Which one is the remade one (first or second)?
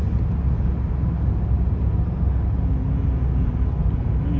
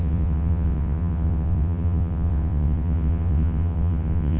second